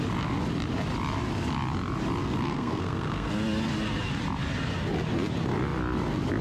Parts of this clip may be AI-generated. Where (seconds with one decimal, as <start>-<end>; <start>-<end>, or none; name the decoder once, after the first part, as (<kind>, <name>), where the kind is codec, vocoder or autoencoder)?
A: 2.2-3.3 (codec, SNAC)